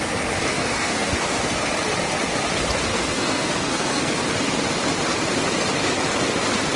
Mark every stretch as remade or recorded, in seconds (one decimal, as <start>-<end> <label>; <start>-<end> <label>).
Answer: 0.0-0.5 recorded; 0.5-1.5 remade; 1.5-2.9 recorded; 2.9-4.1 remade; 4.1-6.8 recorded